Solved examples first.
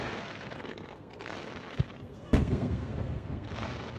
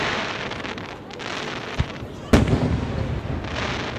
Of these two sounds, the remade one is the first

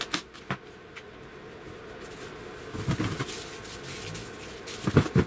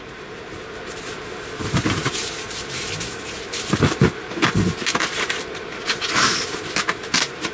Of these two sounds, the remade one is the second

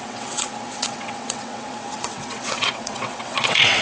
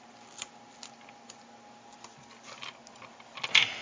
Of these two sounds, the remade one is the first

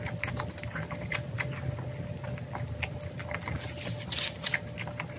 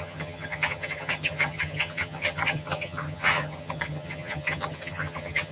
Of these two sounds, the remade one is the second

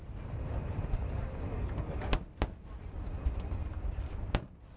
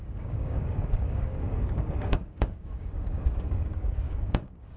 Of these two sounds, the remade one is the second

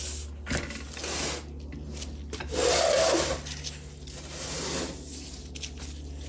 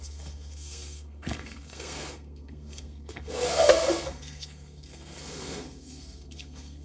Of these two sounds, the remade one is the second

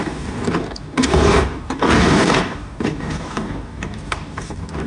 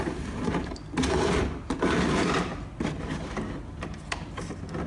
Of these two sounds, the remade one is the first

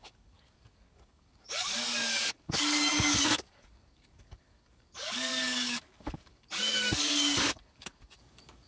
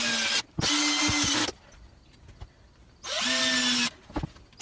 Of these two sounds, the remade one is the first